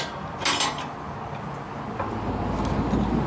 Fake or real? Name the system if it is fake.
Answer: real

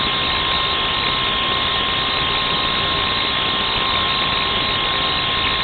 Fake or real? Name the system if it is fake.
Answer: real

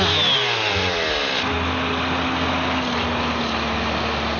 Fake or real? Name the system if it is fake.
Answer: real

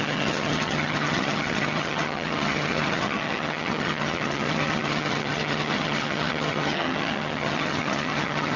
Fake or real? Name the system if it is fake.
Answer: fake, vocoder, HiFi-GAN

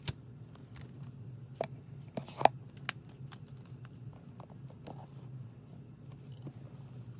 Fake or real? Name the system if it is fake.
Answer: real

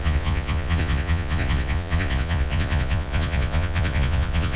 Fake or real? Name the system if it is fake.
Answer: fake, vocoder, Vocos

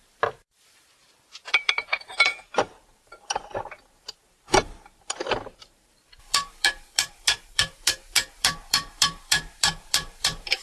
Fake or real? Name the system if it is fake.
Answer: fake, vocoder, BigVGAN v2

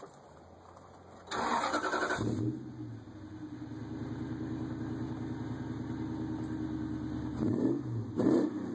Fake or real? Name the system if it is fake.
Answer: real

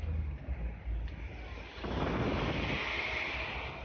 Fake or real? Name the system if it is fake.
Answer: real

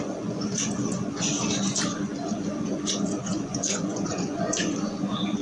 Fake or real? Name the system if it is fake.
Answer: fake, vocoder, Vocos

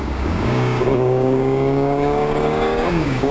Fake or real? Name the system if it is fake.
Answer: fake, codec, DAC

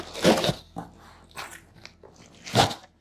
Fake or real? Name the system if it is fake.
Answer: real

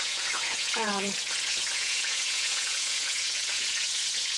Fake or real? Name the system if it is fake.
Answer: fake, vocoder, Vocos